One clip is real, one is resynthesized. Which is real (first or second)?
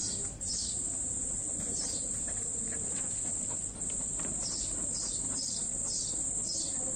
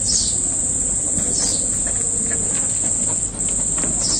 second